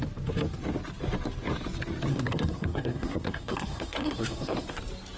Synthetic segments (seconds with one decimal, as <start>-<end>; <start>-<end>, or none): 2.1-4.8